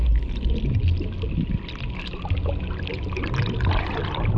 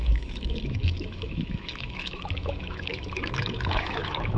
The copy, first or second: second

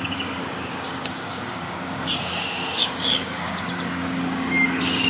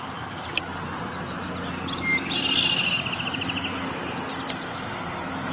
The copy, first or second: first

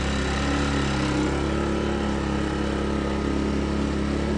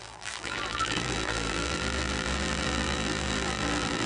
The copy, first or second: second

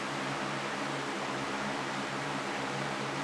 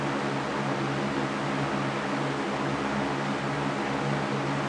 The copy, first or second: first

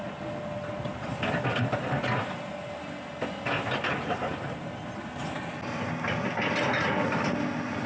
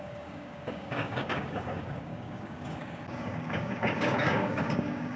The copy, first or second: second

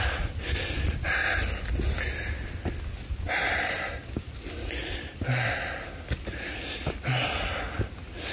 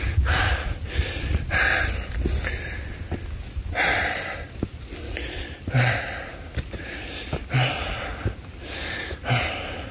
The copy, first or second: second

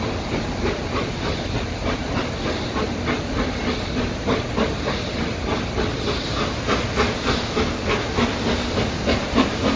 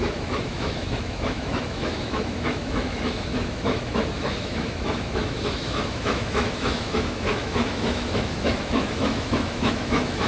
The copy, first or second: second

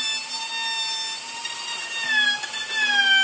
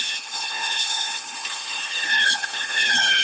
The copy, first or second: second